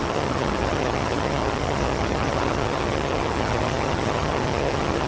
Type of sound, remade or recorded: remade